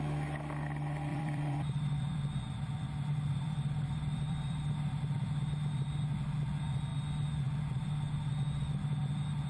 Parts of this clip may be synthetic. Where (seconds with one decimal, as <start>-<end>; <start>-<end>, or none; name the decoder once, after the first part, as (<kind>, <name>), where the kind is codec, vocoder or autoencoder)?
1.1-5.0 (vocoder, BigVGAN v2)